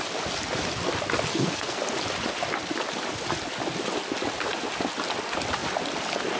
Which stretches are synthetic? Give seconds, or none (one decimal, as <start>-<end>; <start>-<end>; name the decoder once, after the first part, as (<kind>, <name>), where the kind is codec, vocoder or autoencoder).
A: 1.3-1.8 (codec, SNAC)

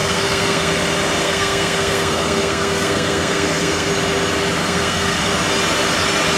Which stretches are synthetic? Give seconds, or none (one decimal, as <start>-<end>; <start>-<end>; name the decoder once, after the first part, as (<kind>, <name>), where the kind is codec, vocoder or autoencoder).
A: 0.0-0.7 (codec, SNAC); 1.2-3.9; 4.6-5.3

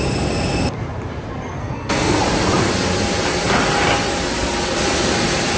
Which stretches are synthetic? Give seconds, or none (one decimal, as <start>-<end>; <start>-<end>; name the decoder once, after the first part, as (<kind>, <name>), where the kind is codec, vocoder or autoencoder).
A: 1.6-2.2 (codec, SNAC)

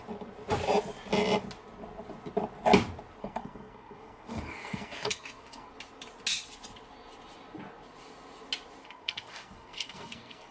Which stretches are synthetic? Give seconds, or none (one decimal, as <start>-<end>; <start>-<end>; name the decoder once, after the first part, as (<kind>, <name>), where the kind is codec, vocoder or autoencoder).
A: 3.2-5.7 (codec, SNAC); 8.8-10.5

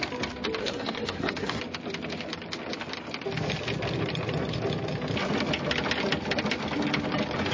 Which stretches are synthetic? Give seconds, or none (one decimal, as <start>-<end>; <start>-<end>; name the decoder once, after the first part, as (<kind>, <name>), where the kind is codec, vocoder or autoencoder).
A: 0.6-1.6 (codec, SNAC)

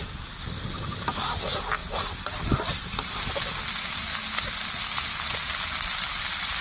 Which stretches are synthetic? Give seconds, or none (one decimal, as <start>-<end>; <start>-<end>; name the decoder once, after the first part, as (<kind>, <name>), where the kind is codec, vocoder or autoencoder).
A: none